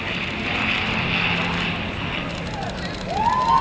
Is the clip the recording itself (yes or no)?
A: yes